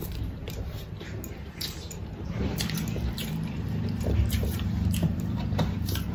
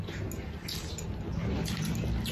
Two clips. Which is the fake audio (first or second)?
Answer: first